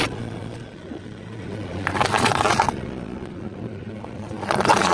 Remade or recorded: remade